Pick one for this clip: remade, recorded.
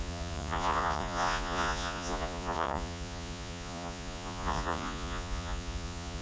remade